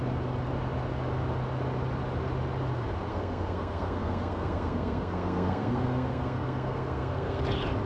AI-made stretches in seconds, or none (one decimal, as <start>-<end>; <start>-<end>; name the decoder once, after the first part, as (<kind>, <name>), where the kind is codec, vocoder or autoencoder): 3.1-7.4 (codec, SNAC)